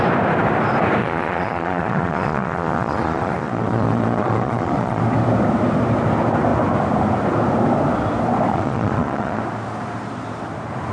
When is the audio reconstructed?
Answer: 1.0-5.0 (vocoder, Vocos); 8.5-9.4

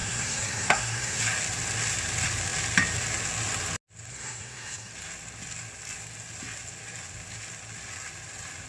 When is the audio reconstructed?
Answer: 0.0-1.2 (codec, SNAC); 4.1-4.9

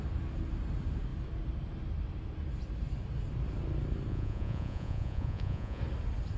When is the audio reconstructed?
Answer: 4.1-5.8 (vocoder, Vocos)